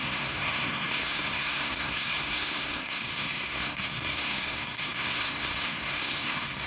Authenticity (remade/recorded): remade